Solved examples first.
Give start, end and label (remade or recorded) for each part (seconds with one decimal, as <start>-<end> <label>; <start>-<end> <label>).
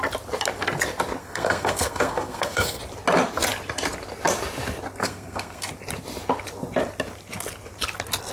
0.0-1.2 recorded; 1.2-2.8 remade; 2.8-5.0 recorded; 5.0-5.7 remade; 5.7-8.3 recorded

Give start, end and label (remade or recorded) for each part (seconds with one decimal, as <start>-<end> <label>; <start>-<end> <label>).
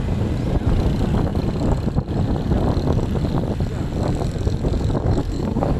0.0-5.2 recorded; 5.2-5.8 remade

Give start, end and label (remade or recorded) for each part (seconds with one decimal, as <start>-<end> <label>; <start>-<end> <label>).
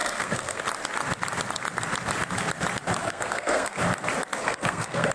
0.0-0.6 remade; 0.6-3.0 recorded; 3.0-3.8 remade; 3.8-4.4 recorded; 4.4-5.1 remade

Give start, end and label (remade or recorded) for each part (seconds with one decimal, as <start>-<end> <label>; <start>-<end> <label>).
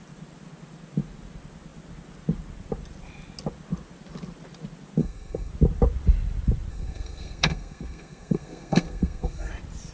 0.0-5.0 recorded; 5.0-5.5 remade; 5.5-6.7 recorded; 6.7-9.5 remade; 9.5-9.9 recorded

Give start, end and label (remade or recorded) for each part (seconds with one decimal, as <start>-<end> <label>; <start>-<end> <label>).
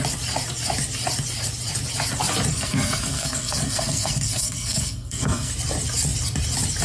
0.0-2.5 recorded; 2.5-5.5 remade; 5.5-6.8 recorded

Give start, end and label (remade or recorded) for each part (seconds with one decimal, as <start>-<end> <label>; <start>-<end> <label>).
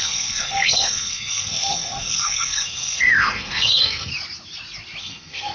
0.0-4.1 remade; 4.1-5.0 recorded; 5.0-5.5 remade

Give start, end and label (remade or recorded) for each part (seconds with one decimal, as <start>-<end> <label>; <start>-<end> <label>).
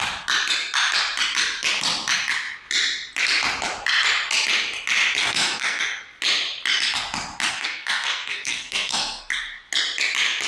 0.0-5.2 recorded; 5.2-5.8 remade; 5.8-7.5 recorded; 7.5-9.3 remade; 9.3-10.5 recorded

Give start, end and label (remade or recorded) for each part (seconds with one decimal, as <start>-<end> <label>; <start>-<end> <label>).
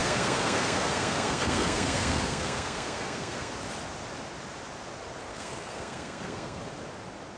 0.0-3.5 remade; 3.5-5.3 recorded; 5.3-6.6 remade; 6.6-7.4 recorded